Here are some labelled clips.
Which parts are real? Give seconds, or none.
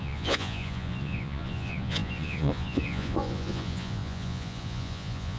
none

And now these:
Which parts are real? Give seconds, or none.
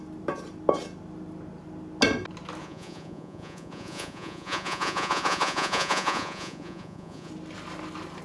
0.0-2.6; 7.3-8.2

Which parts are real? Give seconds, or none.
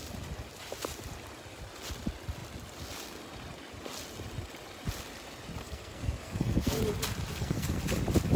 0.0-5.6; 6.8-7.3; 7.8-8.4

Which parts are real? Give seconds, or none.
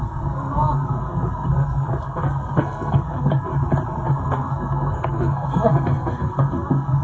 3.5-4.1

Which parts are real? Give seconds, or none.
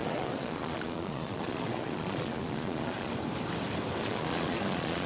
3.1-4.0